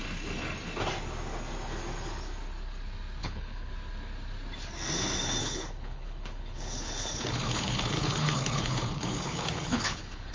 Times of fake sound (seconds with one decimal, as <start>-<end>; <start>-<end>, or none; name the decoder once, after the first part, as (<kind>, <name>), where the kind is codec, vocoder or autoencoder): 3.2-3.7 (codec, HILCodec); 5.4-10.3